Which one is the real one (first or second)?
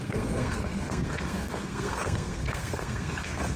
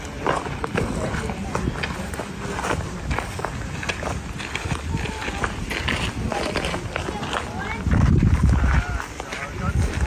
second